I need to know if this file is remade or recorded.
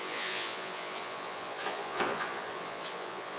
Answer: remade